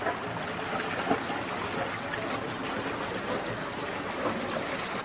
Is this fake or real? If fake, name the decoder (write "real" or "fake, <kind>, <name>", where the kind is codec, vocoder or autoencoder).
real